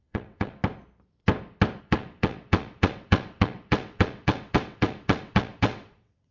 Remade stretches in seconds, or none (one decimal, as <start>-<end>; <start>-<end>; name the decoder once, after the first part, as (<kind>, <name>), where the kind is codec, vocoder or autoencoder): 0.0-0.6 (vocoder, WaveNeXt); 1.8-6.3

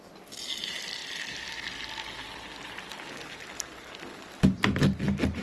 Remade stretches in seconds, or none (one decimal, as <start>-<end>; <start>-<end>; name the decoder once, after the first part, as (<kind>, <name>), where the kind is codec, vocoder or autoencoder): none

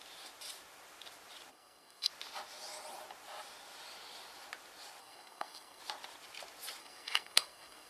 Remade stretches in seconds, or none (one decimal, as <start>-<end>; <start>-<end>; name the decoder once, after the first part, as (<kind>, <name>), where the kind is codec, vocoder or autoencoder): 1.5-2.1 (codec, SNAC); 5.0-5.8; 6.8-7.9

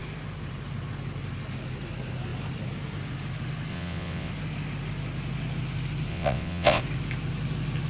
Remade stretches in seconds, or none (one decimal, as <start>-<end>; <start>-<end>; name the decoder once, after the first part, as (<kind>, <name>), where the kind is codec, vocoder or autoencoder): 3.7-4.3 (vocoder, WaveNeXt); 6.1-6.8

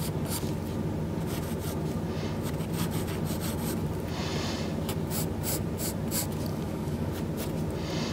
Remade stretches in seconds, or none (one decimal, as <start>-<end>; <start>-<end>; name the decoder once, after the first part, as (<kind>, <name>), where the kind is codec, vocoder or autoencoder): 6.5-7.1 (codec, DAC)

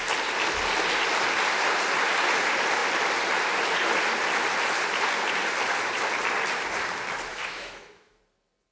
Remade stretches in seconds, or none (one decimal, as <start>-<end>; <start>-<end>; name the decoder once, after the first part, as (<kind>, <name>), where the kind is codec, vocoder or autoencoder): 7.3-8.2 (autoencoder, DAC-VAE)

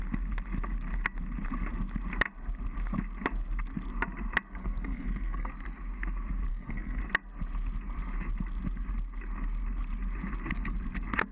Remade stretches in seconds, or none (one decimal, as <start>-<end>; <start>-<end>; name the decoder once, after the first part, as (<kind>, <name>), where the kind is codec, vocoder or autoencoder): 4.6-5.5 (codec, SNAC); 6.5-7.0